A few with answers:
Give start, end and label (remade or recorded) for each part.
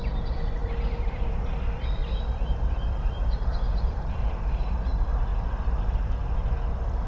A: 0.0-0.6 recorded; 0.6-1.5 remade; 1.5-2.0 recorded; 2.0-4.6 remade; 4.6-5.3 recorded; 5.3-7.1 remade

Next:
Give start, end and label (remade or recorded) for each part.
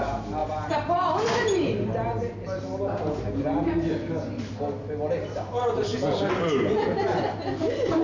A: 0.0-0.4 recorded; 0.4-1.1 remade; 1.1-8.0 recorded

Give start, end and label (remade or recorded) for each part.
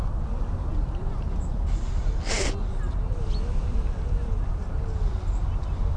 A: 0.0-6.0 recorded